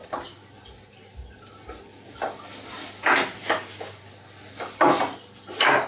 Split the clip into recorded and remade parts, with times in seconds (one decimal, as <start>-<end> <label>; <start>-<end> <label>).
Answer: 0.0-3.4 recorded; 3.4-4.0 remade; 4.0-5.9 recorded